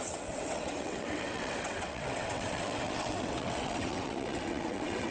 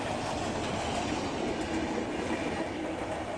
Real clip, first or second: second